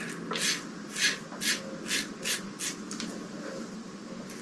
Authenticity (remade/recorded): recorded